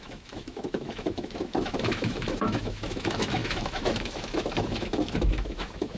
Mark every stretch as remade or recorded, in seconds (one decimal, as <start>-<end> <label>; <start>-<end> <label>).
0.0-6.0 remade